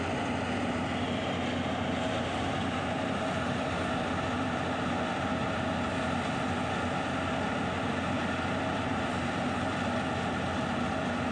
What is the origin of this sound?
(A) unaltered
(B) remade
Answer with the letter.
A